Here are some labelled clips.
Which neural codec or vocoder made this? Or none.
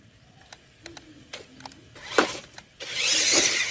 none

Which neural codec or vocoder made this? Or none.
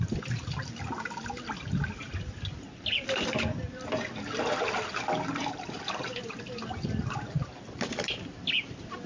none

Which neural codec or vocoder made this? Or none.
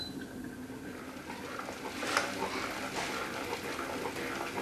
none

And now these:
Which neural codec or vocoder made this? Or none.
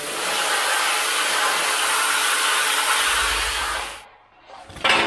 none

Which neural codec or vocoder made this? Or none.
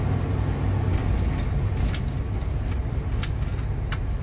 none